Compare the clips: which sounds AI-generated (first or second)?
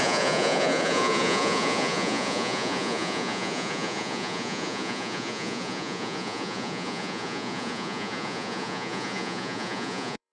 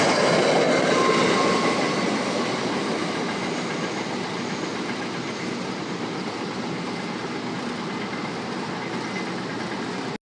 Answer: first